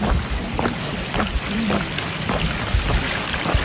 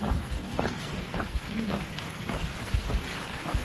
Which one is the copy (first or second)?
second